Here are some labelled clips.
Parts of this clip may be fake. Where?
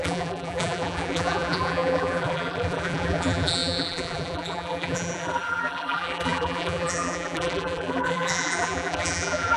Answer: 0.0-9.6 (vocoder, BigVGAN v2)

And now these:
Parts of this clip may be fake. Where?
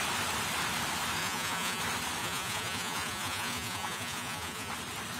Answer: 1.2-1.8 (vocoder, Vocos); 2.2-4.7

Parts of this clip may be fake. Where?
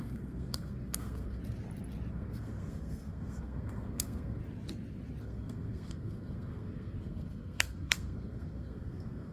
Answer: 0.0-1.4 (codec, SNAC); 2.1-4.4; 5.2-9.3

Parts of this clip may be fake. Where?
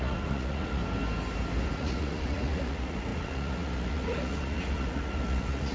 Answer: 0.0-0.8 (vocoder, Vocos); 1.7-5.7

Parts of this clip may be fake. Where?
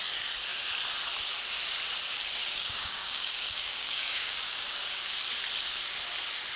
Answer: 2.4-5.2 (codec, DAC)